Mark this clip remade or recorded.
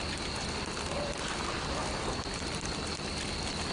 recorded